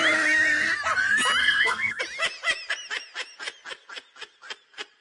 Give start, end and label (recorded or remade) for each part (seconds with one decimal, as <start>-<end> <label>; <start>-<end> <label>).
0.0-1.4 recorded; 1.4-2.0 remade; 2.0-5.0 recorded